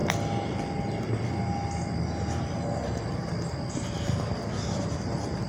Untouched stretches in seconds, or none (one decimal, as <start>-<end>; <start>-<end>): 0.0-5.5